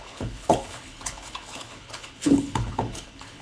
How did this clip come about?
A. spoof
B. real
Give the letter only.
A